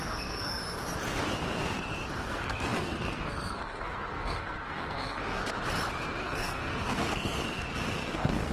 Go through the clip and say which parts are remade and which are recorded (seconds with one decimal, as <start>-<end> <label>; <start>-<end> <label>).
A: 0.0-0.6 remade; 0.6-2.2 recorded; 2.2-5.4 remade; 5.4-6.2 recorded; 6.2-8.5 remade